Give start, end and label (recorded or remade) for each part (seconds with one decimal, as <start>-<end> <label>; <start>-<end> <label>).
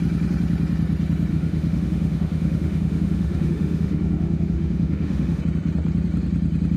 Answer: 0.0-1.3 recorded; 1.3-5.4 remade; 5.4-6.8 recorded